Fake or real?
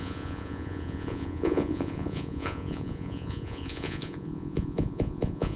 fake